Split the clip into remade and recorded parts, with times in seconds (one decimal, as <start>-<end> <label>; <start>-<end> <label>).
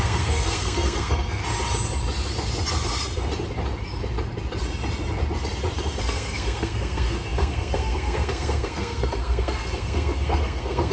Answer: 0.0-1.4 remade; 1.4-6.0 recorded; 6.0-10.9 remade